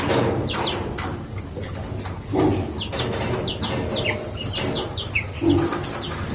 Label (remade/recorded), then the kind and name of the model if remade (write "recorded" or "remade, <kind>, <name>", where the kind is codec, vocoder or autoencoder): recorded